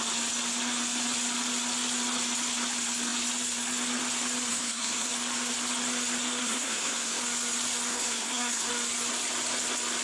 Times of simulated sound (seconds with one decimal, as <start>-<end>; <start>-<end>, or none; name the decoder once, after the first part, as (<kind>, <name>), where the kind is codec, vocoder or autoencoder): 4.5-5.1 (codec, SNAC); 6.4-7.2; 7.9-8.7